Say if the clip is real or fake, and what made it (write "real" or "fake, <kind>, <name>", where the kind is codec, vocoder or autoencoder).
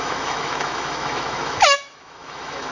fake, autoencoder, DAC-VAE